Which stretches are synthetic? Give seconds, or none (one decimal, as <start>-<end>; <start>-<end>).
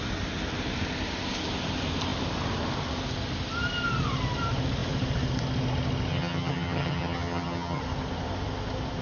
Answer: 6.1-7.8